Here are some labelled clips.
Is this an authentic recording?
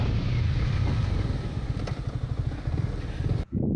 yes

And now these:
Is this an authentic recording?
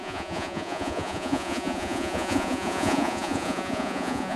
no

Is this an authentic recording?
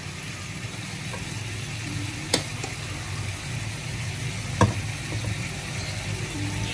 yes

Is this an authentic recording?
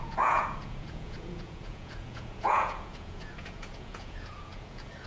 no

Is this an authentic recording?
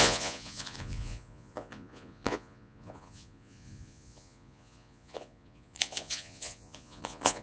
no